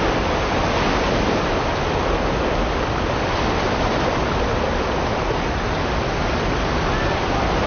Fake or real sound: real